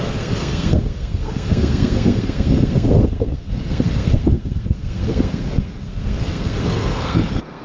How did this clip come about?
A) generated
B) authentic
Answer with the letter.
A